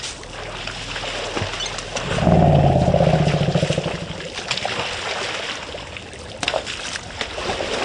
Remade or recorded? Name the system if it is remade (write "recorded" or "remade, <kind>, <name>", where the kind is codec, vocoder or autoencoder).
recorded